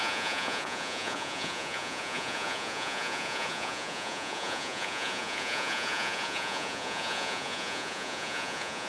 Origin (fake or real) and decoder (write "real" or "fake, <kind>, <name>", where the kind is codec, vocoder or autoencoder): fake, vocoder, Vocos